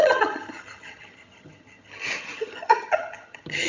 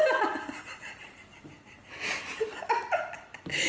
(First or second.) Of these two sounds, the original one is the second